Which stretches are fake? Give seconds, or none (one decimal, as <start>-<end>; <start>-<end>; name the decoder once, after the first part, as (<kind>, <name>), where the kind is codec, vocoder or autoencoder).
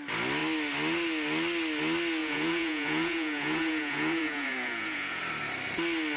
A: 2.2-5.2 (vocoder, Vocos)